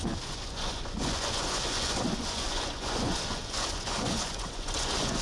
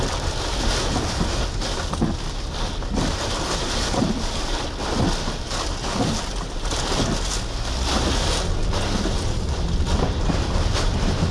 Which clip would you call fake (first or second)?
first